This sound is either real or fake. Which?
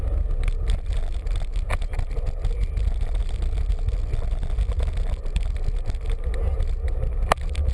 real